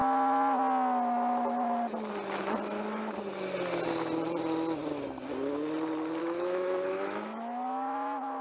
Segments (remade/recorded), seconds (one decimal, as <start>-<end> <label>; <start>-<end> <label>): 0.0-6.2 recorded; 6.2-8.4 remade